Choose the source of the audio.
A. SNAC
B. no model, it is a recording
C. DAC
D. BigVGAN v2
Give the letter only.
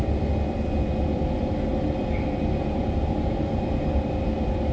D